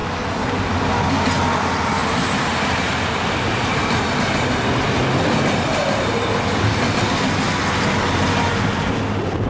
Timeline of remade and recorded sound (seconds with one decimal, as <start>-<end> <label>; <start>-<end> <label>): 0.0-1.3 remade; 1.3-2.0 recorded; 2.0-3.8 remade; 3.8-9.5 recorded